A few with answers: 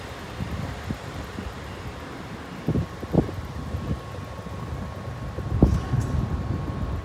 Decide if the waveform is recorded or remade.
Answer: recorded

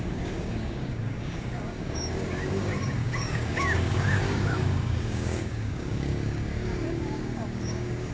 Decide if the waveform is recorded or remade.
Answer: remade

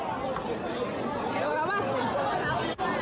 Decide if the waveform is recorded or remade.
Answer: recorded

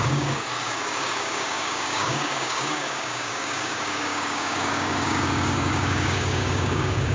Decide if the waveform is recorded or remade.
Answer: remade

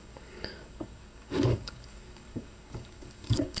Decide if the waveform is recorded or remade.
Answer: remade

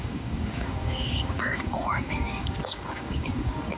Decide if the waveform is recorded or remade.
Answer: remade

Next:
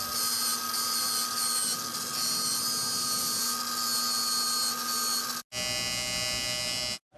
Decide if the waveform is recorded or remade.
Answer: recorded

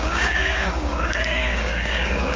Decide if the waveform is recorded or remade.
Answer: remade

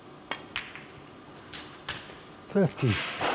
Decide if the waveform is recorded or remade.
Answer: recorded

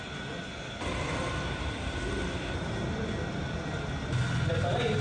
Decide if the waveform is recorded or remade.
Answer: recorded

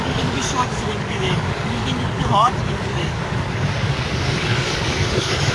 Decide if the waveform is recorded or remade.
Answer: remade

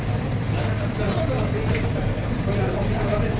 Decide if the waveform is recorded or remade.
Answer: recorded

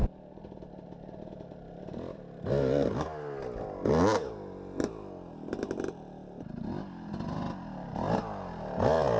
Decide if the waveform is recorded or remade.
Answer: recorded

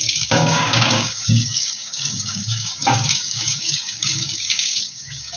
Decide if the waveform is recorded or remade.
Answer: remade